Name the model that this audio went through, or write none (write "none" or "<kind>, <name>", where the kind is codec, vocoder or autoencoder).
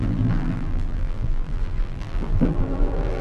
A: vocoder, BigVGAN v2